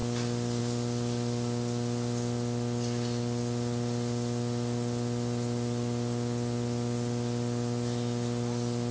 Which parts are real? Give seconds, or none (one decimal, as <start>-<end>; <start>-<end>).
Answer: 0.0-8.9